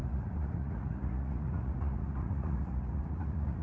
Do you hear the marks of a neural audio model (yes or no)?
yes